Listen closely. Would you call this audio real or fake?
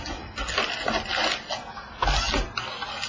real